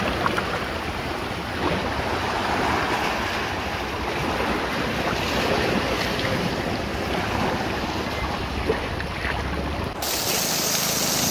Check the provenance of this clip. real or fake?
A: real